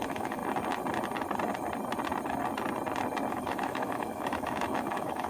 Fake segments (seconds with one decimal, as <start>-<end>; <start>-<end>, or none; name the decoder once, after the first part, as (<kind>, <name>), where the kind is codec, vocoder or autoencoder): 0.0-0.4 (autoencoder, DAC-VAE); 3.3-5.3